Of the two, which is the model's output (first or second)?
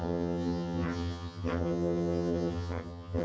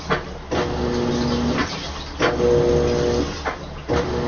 first